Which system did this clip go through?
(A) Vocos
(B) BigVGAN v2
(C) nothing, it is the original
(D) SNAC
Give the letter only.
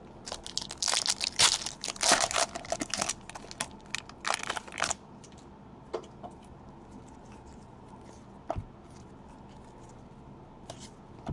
C